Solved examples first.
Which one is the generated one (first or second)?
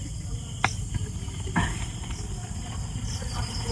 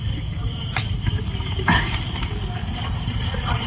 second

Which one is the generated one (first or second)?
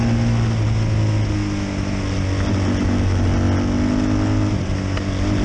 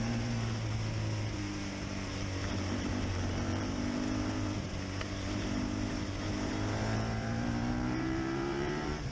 second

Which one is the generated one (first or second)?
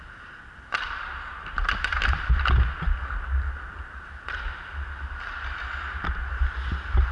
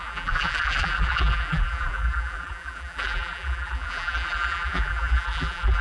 second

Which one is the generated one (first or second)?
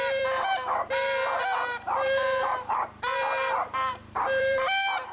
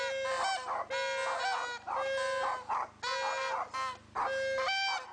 first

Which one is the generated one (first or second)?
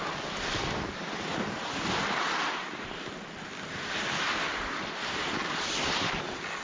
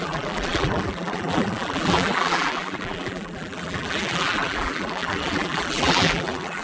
second